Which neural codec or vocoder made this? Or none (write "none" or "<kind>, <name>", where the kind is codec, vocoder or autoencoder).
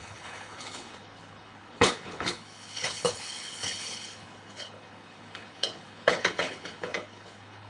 codec, HILCodec